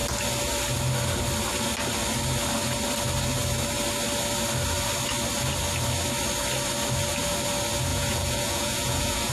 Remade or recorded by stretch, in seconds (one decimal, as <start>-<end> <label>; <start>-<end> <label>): 0.0-7.9 recorded; 7.9-9.3 remade